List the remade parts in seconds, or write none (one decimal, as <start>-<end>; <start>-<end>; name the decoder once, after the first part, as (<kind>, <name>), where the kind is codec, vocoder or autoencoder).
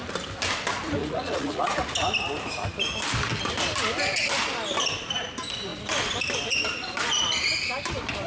1.0-1.9 (vocoder, Vocos)